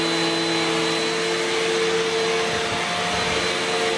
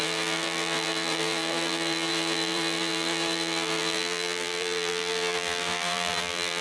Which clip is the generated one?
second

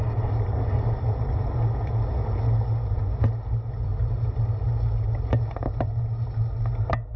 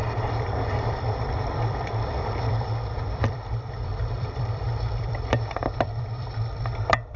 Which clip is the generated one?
second